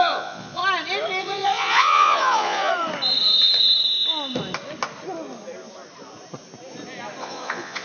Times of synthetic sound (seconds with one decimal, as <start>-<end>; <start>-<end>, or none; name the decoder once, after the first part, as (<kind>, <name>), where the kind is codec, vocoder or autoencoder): 0.0-0.6 (vocoder, Vocos); 1.2-2.7; 7.2-7.8

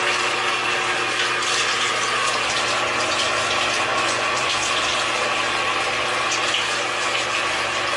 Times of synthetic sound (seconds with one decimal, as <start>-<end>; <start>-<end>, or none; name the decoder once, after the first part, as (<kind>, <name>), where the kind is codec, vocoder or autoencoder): 3.9-4.5 (vocoder, Vocos)

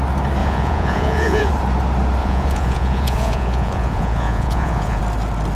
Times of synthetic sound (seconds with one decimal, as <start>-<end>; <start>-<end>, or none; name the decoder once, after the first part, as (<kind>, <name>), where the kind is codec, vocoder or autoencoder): 0.4-1.5 (vocoder, Vocos); 2.2-5.0

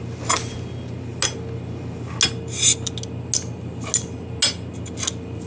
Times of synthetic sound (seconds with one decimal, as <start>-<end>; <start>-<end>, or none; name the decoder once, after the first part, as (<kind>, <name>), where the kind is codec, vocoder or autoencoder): none

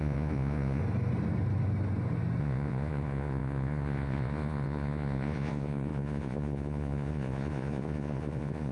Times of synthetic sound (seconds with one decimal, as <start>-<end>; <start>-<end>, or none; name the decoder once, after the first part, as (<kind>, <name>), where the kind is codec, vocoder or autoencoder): 0.0-0.8 (vocoder, Vocos); 2.4-8.7

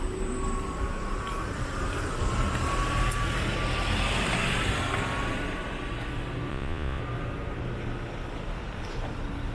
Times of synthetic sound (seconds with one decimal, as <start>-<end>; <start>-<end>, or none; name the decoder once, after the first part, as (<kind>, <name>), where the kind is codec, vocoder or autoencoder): 6.5-7.0 (vocoder, Vocos)

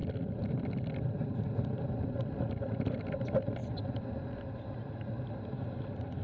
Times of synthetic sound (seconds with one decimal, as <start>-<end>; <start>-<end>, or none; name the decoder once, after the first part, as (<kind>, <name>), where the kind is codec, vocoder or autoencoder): none